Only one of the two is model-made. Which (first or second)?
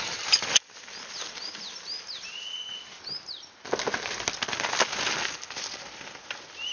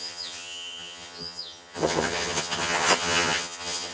second